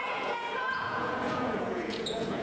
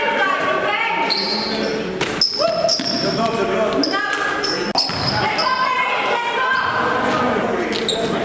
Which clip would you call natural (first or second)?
second